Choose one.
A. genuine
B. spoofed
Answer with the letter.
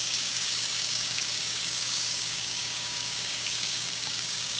B